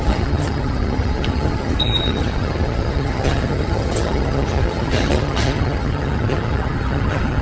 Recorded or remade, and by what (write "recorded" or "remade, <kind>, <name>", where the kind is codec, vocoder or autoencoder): remade, vocoder, HiFi-GAN